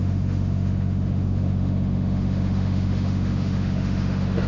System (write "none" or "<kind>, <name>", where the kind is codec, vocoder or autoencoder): autoencoder, DAC-VAE